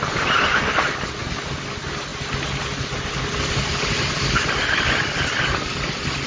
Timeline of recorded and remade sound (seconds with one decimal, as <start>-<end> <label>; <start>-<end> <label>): 0.0-6.3 recorded